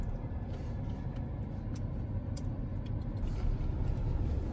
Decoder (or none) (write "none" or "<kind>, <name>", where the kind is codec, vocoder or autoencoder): none